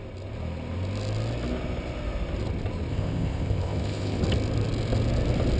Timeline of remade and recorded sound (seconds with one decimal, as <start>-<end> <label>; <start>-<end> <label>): 0.0-2.9 recorded; 2.9-4.2 remade; 4.2-5.6 recorded